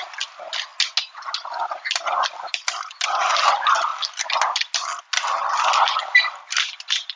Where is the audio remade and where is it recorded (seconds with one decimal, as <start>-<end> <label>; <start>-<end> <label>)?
0.0-7.2 recorded